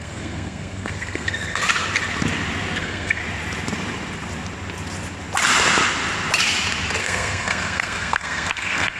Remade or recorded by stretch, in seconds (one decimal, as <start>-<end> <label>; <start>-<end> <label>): 0.0-1.6 remade; 1.6-2.8 recorded; 2.8-3.2 remade; 3.2-7.0 recorded; 7.0-9.0 remade